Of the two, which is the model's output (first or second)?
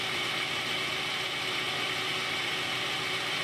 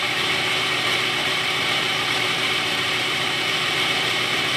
second